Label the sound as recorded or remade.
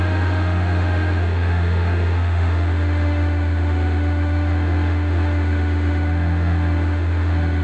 remade